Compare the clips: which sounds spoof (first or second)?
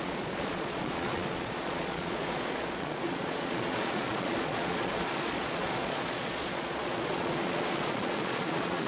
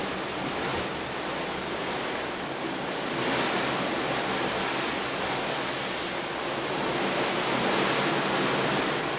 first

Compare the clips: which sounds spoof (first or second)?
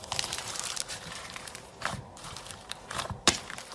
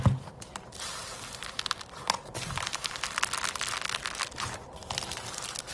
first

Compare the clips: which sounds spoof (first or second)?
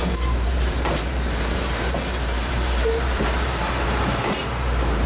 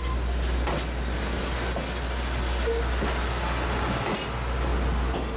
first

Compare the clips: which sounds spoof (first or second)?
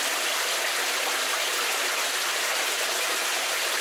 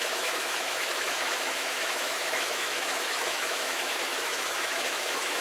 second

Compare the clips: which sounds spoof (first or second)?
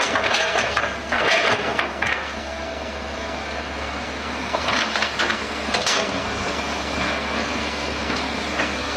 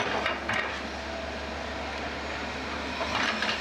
first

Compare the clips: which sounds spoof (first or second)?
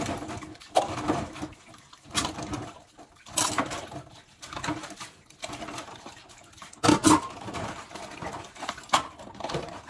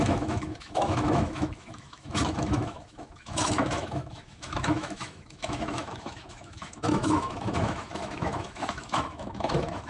second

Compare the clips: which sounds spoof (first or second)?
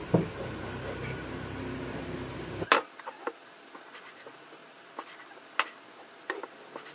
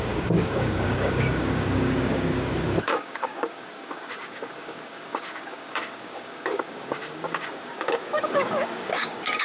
second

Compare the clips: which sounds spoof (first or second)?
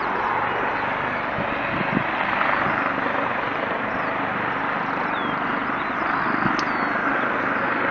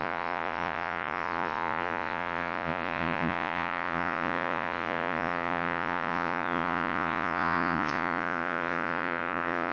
second